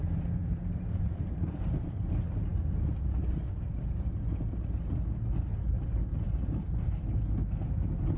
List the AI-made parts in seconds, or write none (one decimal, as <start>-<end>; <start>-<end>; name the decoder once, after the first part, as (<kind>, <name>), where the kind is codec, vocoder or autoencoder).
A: 0.0-1.7 (vocoder, BigVGAN v2); 6.1-6.7